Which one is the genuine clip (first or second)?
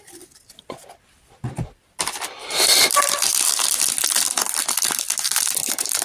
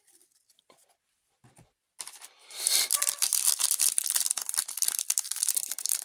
first